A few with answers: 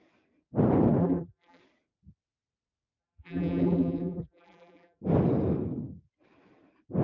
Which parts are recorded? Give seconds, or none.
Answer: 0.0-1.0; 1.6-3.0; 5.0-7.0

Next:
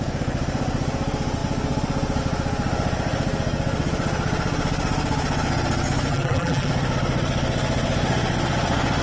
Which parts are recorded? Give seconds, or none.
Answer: 0.0-6.1; 6.7-9.0

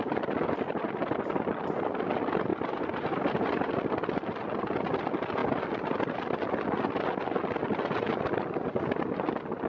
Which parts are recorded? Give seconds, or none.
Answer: 0.0-2.5; 3.7-9.7

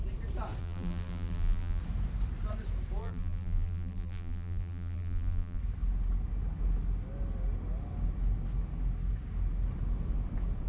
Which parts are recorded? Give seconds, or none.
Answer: 0.0-0.6; 1.8-3.0; 5.6-10.7

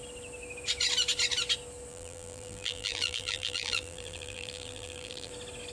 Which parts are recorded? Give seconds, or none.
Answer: 0.0-1.9; 5.3-5.7